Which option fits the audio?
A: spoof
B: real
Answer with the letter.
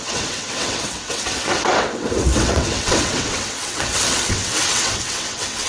A